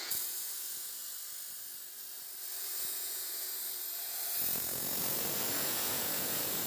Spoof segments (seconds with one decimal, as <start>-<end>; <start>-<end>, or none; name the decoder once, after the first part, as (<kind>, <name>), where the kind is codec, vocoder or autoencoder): 0.0-1.0 (vocoder, Vocos); 2.6-3.6; 4.4-6.7